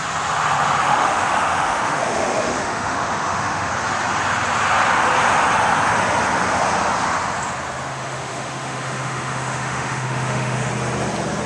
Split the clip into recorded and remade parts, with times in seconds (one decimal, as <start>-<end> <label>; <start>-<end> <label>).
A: 0.0-0.8 recorded; 0.8-3.7 remade; 3.7-7.9 recorded; 7.9-10.7 remade; 10.7-11.5 recorded